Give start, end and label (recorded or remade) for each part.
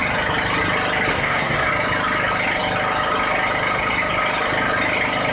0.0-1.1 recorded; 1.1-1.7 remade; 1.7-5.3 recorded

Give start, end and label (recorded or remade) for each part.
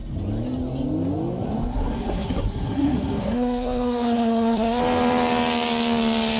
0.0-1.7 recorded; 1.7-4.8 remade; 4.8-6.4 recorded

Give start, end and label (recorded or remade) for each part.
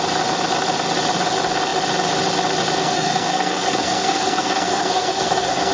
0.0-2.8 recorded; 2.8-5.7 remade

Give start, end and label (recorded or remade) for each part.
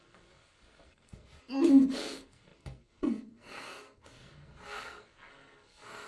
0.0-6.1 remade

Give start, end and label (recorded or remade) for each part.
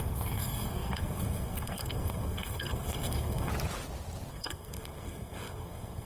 0.0-3.5 remade; 3.5-4.3 recorded; 4.3-6.0 remade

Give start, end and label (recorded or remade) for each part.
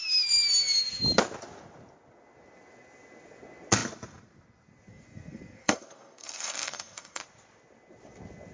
0.0-4.9 recorded; 4.9-7.2 remade; 7.2-8.5 recorded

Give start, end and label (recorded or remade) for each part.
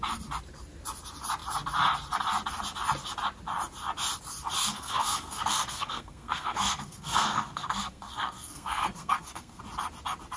0.0-4.6 recorded; 4.6-9.6 remade; 9.6-10.4 recorded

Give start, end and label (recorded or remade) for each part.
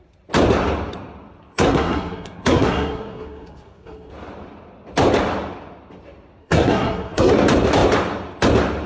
0.0-1.5 recorded; 1.5-4.1 remade; 4.1-6.4 recorded; 6.4-7.3 remade; 7.3-8.9 recorded